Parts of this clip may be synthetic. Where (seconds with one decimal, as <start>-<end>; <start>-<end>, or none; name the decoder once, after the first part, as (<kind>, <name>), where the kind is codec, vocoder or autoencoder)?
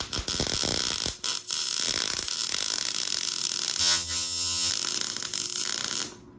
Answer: 3.8-4.7 (vocoder, HiFi-GAN)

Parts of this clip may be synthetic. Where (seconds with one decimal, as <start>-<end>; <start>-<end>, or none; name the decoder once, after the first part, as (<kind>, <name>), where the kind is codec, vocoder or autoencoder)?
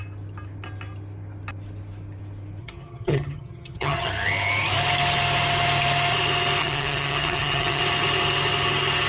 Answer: 2.6-4.1 (vocoder, HiFi-GAN); 6.6-7.8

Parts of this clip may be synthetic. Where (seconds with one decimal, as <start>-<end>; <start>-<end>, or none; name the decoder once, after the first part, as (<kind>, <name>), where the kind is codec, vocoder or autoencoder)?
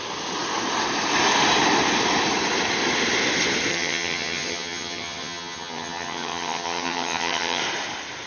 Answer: 3.7-7.6 (vocoder, HiFi-GAN)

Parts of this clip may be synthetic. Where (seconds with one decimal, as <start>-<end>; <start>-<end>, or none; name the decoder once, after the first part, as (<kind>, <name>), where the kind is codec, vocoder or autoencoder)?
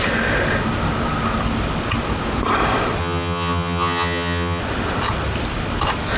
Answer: 3.0-4.6 (vocoder, HiFi-GAN)